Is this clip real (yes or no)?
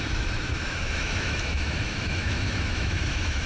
no